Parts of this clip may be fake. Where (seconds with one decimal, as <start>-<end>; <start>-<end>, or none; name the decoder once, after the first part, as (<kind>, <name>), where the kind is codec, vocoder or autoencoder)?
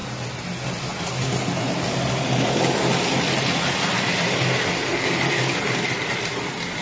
none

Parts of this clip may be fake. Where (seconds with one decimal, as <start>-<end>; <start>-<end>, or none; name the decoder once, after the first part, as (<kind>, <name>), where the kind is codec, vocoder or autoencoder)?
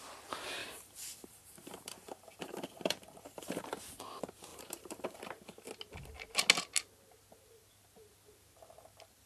0.6-3.8 (vocoder, BigVGAN v2); 4.5-5.2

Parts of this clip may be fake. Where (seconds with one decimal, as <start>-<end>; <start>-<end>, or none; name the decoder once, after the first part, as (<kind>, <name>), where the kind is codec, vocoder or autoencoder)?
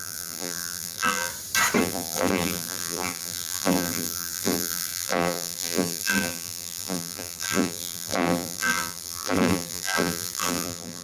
0.0-1.3 (vocoder, BigVGAN v2); 1.8-11.0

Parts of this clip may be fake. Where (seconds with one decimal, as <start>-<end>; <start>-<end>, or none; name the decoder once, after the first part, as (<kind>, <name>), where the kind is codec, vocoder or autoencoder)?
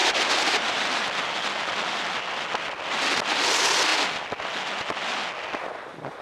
0.0-0.8 (vocoder, BigVGAN v2)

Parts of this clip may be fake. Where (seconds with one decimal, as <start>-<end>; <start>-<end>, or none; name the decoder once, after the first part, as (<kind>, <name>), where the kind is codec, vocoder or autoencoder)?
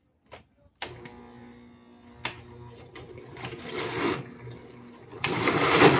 5.1-6.0 (vocoder, BigVGAN v2)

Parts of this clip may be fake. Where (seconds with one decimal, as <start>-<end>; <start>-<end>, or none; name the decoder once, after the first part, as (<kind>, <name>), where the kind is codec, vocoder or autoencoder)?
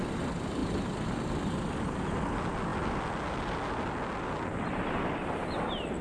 none